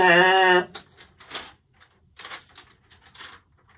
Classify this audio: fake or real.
real